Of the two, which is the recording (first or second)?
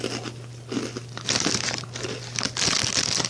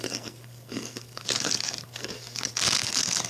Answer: first